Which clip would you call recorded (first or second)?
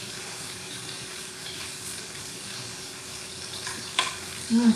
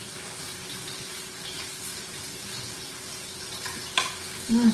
second